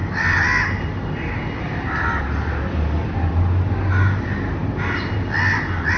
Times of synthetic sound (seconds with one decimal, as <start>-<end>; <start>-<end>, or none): none